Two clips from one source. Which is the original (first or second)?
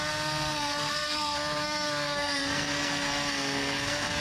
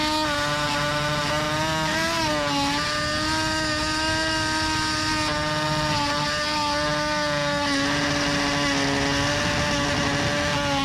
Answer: second